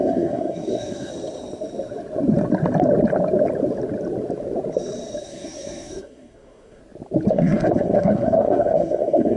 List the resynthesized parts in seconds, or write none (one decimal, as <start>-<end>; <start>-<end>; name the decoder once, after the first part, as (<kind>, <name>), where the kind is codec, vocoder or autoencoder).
0.0-1.1 (codec, SNAC); 5.2-6.8; 7.3-9.4